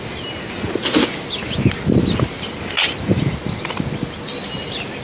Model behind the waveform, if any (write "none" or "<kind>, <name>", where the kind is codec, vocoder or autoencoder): none